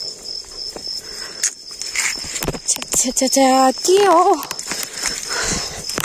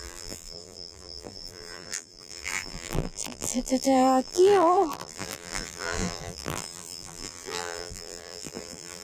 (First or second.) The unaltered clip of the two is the first